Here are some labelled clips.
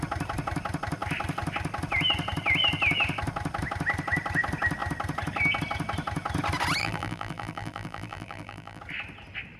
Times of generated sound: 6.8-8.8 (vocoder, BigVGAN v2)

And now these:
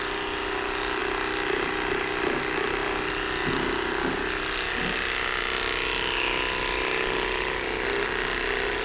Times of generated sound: none